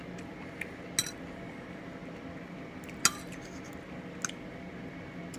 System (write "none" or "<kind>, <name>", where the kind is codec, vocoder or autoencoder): none